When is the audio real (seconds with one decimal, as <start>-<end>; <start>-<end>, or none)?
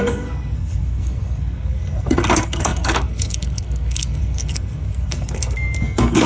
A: none